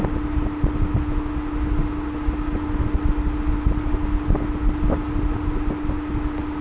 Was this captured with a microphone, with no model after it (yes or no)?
yes